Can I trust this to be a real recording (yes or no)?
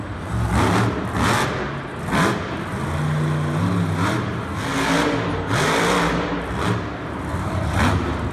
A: yes